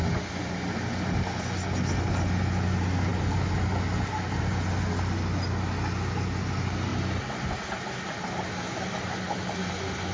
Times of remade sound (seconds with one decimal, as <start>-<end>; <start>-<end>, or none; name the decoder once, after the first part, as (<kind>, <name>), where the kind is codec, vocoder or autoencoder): none